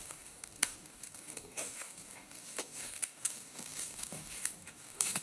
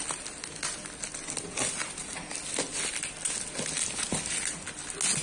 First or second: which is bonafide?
second